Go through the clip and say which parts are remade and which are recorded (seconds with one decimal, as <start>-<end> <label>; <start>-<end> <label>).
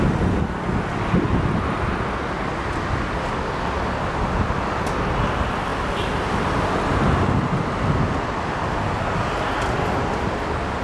0.0-10.8 recorded